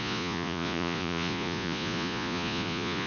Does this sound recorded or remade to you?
remade